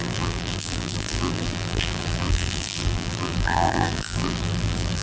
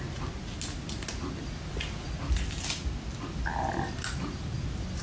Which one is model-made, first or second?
first